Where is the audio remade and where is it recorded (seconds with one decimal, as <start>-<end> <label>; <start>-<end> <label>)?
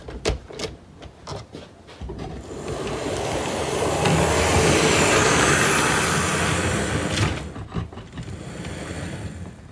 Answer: 0.0-9.7 recorded